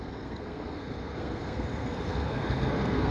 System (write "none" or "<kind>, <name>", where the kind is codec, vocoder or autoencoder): codec, SNAC